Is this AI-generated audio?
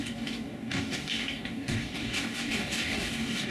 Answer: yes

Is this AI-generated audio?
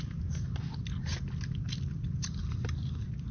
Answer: no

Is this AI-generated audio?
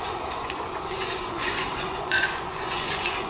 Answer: yes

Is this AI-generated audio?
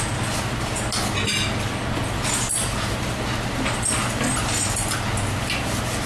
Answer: no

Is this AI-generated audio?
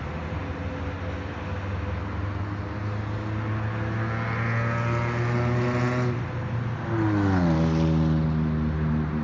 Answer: no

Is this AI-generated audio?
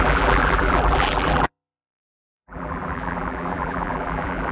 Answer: yes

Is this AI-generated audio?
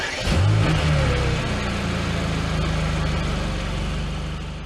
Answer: no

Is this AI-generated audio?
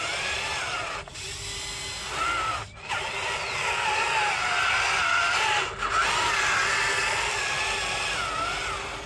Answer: no